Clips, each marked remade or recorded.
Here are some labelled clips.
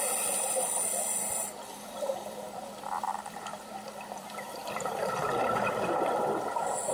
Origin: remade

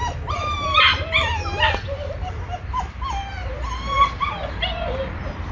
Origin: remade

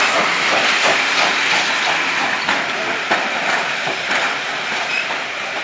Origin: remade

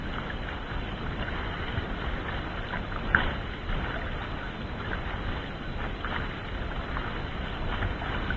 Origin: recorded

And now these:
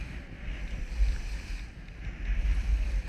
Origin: recorded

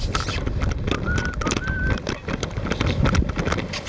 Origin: remade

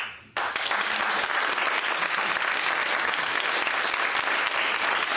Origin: recorded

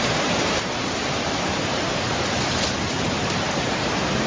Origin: remade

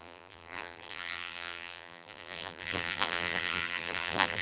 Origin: remade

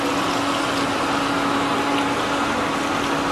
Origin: recorded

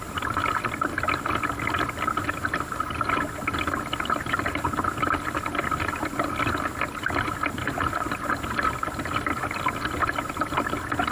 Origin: recorded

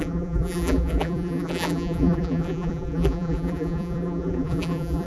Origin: remade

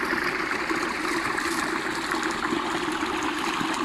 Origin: remade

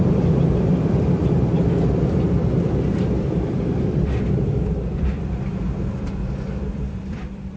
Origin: remade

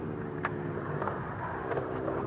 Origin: recorded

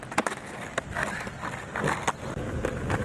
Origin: recorded